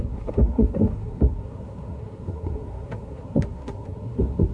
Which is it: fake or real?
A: fake